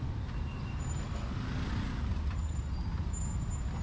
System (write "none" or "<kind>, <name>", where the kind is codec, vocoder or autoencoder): none